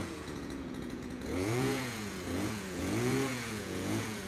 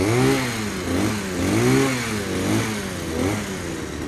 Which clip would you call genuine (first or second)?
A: second